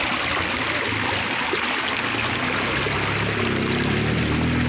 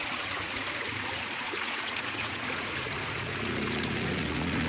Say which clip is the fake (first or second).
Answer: second